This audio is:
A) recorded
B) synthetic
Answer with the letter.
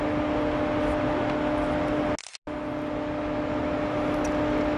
A